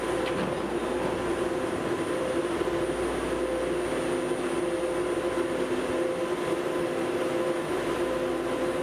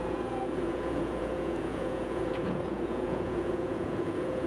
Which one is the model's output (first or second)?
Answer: second